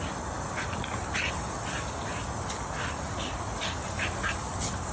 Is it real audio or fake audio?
real